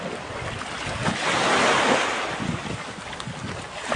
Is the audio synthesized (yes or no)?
no